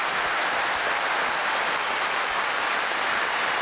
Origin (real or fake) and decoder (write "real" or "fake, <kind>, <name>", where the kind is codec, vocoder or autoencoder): real